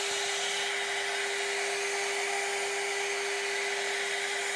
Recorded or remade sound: recorded